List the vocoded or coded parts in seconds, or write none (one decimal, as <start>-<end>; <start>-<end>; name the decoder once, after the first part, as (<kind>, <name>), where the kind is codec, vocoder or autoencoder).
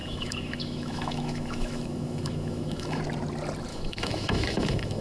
0.0-3.0 (autoencoder, DAC-VAE); 3.7-5.0